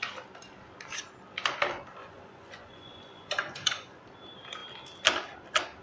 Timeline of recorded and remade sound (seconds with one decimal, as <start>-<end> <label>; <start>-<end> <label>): 0.0-2.0 recorded; 2.0-4.0 remade; 4.0-5.8 recorded